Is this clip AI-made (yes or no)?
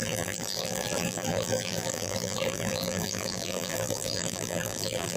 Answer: yes